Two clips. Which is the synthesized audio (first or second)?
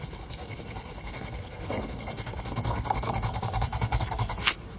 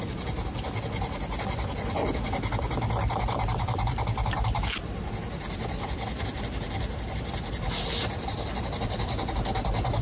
first